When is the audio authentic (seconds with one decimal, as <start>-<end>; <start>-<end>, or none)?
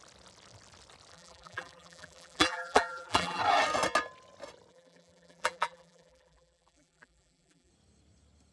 0.0-1.1; 3.4-4.7; 7.7-8.5